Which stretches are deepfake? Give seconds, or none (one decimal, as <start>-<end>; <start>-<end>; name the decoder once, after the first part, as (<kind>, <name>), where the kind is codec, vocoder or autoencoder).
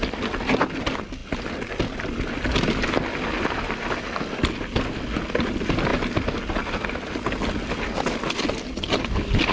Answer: none